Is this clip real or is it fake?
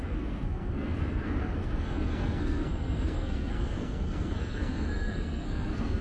fake